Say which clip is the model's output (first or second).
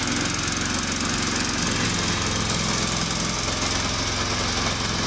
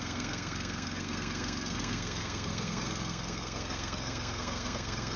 second